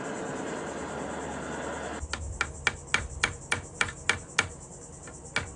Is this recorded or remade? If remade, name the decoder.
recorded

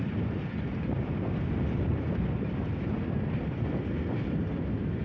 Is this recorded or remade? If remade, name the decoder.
recorded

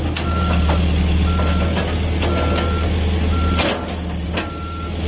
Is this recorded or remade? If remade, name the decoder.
recorded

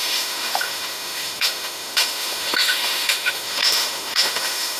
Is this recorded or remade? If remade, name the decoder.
remade, autoencoder, DAC-VAE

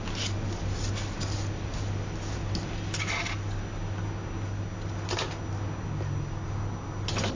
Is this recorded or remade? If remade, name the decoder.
recorded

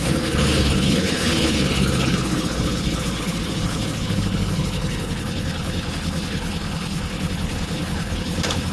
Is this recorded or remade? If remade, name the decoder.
remade, codec, HILCodec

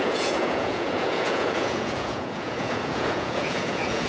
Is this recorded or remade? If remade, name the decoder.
remade, vocoder, Vocos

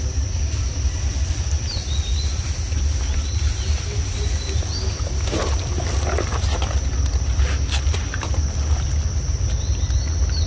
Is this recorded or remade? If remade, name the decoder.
recorded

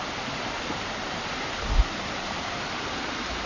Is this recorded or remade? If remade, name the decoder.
recorded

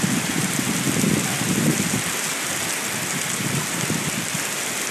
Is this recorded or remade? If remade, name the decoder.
recorded